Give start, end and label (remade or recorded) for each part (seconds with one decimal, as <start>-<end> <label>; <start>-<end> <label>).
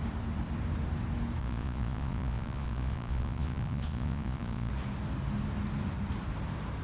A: 0.0-1.4 recorded; 1.4-4.7 remade; 4.7-6.8 recorded